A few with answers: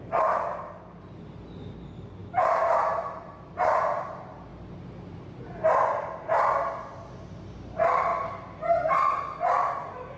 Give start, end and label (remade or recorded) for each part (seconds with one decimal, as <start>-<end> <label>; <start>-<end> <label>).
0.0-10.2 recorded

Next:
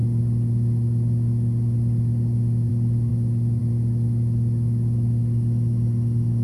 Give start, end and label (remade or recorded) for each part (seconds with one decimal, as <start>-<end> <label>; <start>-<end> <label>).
0.0-6.4 recorded

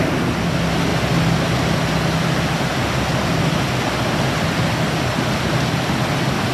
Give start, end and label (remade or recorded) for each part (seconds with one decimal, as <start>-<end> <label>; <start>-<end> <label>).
0.0-6.5 recorded

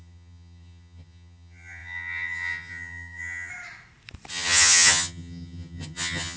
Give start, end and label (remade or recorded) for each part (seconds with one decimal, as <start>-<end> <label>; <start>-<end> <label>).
0.0-3.5 remade; 3.5-4.3 recorded; 4.3-6.4 remade

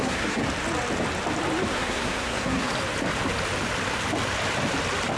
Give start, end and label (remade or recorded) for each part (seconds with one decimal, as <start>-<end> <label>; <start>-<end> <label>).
0.0-0.4 remade; 0.4-1.7 recorded; 1.7-2.7 remade; 2.7-5.2 recorded